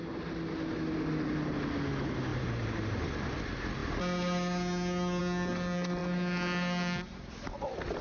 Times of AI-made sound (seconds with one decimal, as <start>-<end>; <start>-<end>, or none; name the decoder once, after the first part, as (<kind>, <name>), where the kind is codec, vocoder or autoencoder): 2.3-3.0 (vocoder, BigVGAN v2)